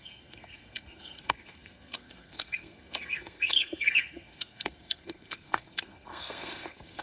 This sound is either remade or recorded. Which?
remade